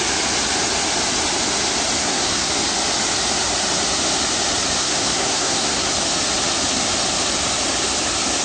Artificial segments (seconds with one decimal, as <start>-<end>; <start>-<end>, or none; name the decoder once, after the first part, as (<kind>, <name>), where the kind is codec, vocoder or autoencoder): 2.0-2.5 (codec, SNAC); 4.8-5.9